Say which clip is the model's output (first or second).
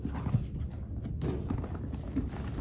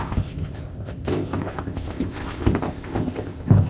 second